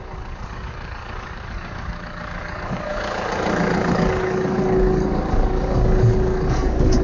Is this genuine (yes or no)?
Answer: no